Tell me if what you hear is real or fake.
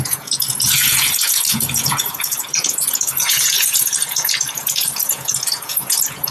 fake